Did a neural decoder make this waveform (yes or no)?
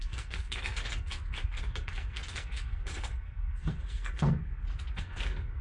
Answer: yes